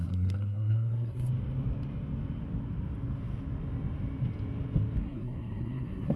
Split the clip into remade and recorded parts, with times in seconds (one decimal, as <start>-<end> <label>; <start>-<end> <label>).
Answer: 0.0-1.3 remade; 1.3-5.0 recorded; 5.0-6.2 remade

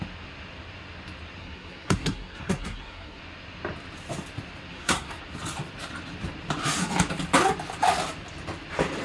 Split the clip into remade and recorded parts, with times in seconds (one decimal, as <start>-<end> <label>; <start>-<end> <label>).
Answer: 0.0-1.4 recorded; 1.4-3.2 remade; 3.2-4.7 recorded; 4.7-5.2 remade; 5.2-9.0 recorded

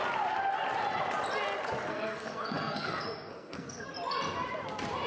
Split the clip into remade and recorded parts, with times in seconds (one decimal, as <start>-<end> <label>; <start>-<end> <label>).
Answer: 0.0-1.9 recorded; 1.9-3.9 remade; 3.9-5.1 recorded

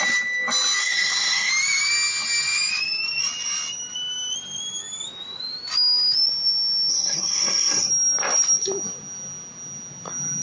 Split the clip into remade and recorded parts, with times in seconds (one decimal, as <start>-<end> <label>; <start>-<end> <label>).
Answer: 0.0-0.8 recorded; 0.8-1.5 remade; 1.5-6.9 recorded; 6.9-7.9 remade; 7.9-10.4 recorded

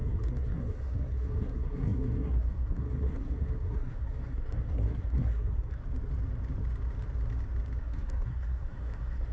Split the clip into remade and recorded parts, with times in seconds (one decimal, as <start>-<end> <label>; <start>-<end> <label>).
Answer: 0.0-5.8 remade; 5.8-7.8 recorded; 7.8-9.3 remade

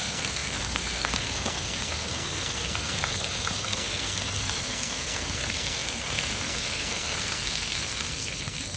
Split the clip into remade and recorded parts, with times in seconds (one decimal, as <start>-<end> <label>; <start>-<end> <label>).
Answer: 0.0-8.8 remade